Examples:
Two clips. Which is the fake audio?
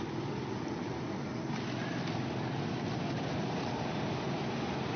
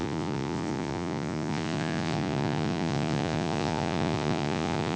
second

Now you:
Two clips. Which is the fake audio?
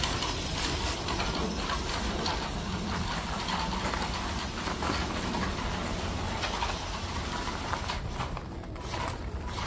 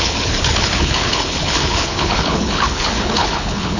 second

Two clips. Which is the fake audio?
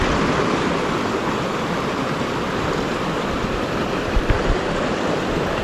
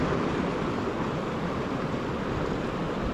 first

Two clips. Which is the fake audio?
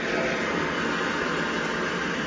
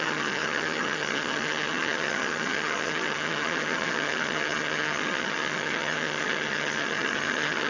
second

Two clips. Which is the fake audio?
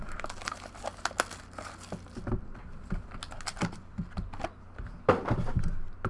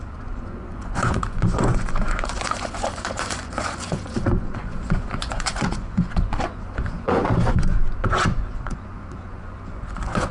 second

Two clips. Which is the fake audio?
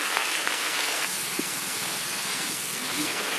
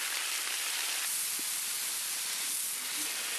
first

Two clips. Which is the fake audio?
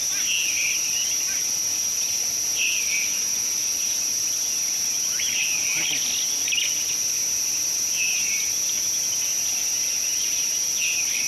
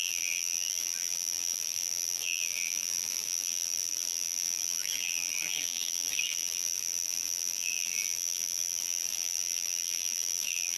second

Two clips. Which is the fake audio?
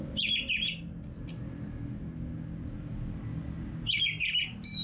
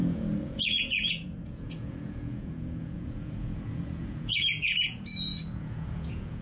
second